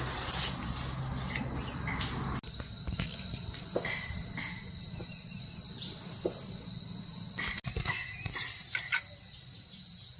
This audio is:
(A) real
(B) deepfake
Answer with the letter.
A